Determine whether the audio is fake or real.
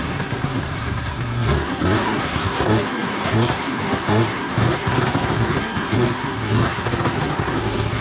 fake